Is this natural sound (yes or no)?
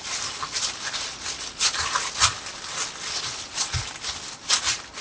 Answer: yes